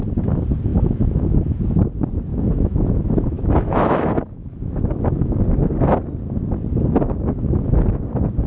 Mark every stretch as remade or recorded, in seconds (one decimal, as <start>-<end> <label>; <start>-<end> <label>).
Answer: 0.0-0.7 recorded; 0.7-1.6 remade; 1.6-2.3 recorded; 2.3-5.4 remade; 5.4-8.5 recorded